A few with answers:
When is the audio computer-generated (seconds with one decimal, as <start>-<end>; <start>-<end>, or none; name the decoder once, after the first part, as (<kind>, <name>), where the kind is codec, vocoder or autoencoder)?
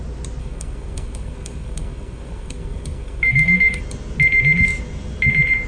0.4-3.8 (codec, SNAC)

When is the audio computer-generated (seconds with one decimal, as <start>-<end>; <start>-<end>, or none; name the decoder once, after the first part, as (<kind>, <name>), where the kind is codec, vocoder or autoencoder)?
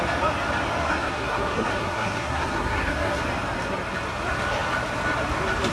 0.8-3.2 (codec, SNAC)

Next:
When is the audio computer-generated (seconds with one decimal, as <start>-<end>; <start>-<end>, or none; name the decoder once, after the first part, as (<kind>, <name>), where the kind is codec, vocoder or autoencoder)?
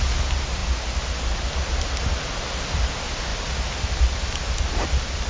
none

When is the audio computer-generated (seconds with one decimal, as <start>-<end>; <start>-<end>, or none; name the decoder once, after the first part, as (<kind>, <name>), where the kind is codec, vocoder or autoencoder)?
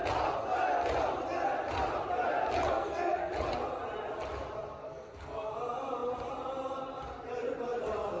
2.7-3.3 (codec, SNAC); 4.8-5.5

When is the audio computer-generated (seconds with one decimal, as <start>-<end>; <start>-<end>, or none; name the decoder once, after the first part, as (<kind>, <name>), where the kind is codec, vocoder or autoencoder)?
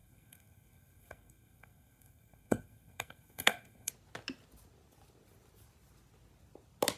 0.0-3.9 (codec, SNAC)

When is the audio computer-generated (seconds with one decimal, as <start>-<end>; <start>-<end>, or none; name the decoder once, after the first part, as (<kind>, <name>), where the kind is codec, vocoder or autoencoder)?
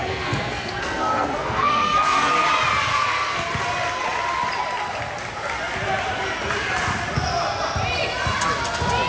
0.0-2.3 (codec, SNAC); 2.9-3.5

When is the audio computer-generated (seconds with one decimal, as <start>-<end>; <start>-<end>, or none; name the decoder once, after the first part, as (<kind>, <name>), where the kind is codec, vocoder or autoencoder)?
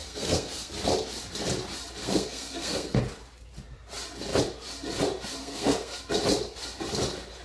0.0-0.7 (codec, SNAC); 2.0-3.0; 5.4-6.0